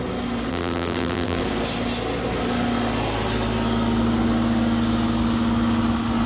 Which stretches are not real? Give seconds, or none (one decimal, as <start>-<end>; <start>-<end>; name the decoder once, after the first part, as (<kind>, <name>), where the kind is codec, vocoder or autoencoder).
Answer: 0.5-1.4 (vocoder, BigVGAN v2)